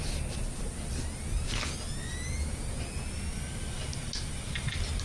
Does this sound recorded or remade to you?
recorded